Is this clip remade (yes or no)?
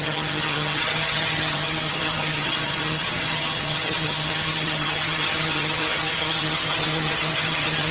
yes